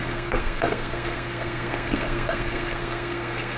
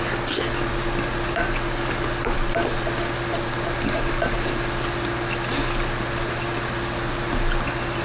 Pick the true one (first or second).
second